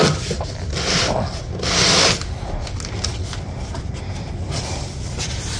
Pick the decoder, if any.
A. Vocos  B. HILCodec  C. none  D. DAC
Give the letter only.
C